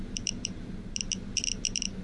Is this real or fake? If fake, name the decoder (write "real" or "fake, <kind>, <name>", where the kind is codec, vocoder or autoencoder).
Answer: real